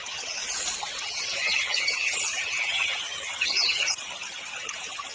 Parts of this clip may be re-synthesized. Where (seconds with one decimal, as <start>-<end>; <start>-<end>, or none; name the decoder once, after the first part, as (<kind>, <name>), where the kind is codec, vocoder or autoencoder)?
0.0-0.4 (vocoder, HiFi-GAN); 1.0-5.1